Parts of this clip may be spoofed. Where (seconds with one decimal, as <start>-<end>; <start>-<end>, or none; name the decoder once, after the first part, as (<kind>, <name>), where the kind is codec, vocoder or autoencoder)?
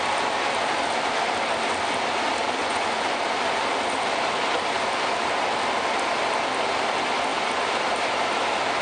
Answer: 2.6-3.2 (vocoder, Vocos)